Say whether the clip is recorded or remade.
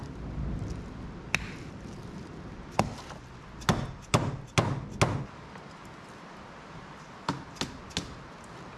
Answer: recorded